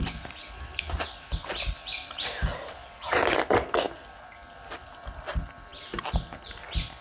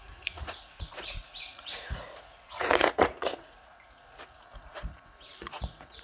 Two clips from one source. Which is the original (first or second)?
first